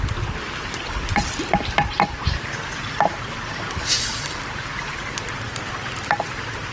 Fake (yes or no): no